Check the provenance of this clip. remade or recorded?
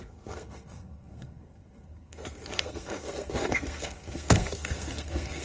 remade